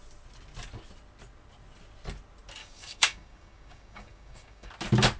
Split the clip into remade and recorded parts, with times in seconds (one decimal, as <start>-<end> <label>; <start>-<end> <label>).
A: 0.0-2.6 recorded; 2.6-4.7 remade; 4.7-5.2 recorded